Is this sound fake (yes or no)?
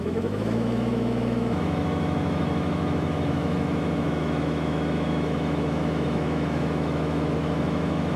yes